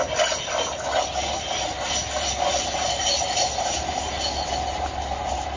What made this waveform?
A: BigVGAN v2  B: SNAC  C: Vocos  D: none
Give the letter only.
D